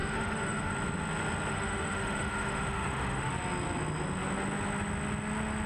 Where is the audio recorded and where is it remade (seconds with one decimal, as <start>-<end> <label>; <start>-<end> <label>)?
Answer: 0.0-0.7 remade; 0.7-1.5 recorded; 1.5-3.3 remade; 3.3-5.7 recorded